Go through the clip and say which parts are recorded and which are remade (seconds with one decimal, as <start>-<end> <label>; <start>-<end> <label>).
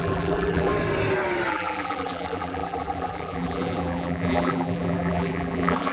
0.0-0.7 remade; 0.7-1.5 recorded; 1.5-5.9 remade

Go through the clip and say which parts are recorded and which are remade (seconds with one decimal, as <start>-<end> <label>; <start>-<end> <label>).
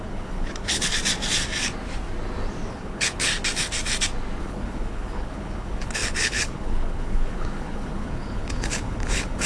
0.0-0.9 remade; 0.9-2.7 recorded; 2.7-3.3 remade; 3.3-4.4 recorded; 4.4-9.5 remade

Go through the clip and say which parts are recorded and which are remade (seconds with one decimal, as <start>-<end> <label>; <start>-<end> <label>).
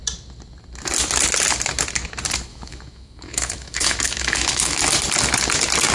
0.0-2.5 recorded; 2.5-4.8 remade; 4.8-5.9 recorded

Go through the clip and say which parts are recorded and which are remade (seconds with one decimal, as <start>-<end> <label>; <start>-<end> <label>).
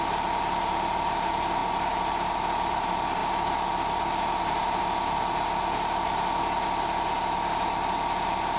0.0-8.6 recorded